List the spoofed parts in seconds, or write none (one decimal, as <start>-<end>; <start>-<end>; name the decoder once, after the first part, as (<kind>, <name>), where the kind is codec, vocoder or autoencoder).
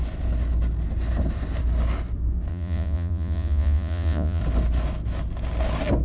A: 2.5-4.4 (vocoder, Vocos)